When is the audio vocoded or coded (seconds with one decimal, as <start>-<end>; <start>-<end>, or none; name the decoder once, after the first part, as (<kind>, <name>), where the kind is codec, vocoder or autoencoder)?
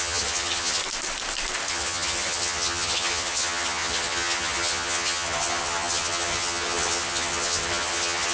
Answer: 0.0-0.8 (vocoder, HiFi-GAN); 1.7-8.3